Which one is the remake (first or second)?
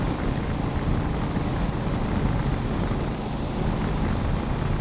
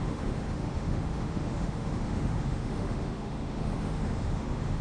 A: second